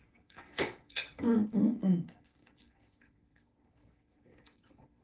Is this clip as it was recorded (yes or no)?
no